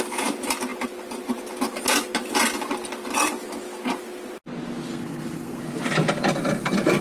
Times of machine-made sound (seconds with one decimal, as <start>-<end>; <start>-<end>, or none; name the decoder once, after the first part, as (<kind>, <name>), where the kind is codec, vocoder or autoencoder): 4.9-5.6 (codec, SNAC)